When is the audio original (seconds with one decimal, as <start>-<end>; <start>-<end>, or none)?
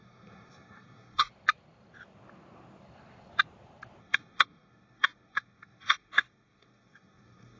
1.3-4.0